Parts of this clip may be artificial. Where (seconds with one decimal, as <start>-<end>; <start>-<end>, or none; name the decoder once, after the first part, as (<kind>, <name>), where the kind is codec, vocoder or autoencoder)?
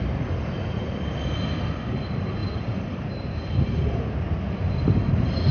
2.4-4.0 (vocoder, BigVGAN v2)